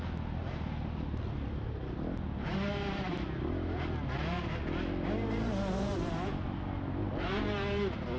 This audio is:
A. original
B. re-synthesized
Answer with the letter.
A